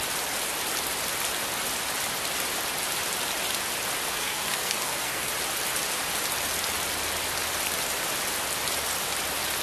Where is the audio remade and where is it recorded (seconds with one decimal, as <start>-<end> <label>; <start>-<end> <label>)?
0.0-4.1 recorded; 4.1-5.3 remade; 5.3-9.6 recorded